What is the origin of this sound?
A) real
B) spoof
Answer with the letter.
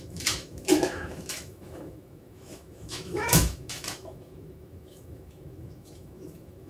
B